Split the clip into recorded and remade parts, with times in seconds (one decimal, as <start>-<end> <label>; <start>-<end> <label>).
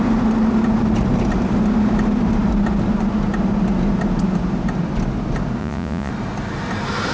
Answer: 0.0-5.6 recorded; 5.6-6.1 remade; 6.1-7.1 recorded